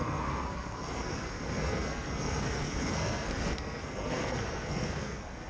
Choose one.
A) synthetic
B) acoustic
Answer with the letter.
A